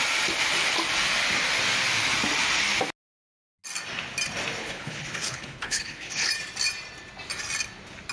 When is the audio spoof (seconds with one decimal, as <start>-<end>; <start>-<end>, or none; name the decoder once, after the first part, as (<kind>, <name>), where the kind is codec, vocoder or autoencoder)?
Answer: 4.6-6.3 (codec, HILCodec)